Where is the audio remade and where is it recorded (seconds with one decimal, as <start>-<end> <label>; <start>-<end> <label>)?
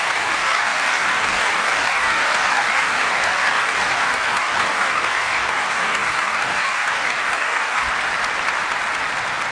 0.0-7.9 remade; 7.9-9.5 recorded